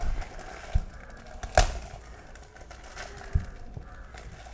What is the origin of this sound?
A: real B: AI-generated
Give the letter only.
A